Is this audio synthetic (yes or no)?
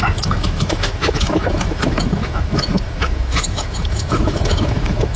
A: yes